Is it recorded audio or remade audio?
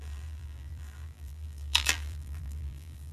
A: remade